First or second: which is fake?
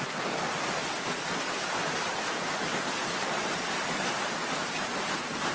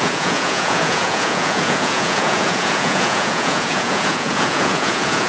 second